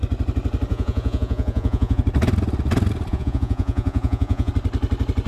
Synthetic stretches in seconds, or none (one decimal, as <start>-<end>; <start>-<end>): 0.7-2.0; 3.1-4.5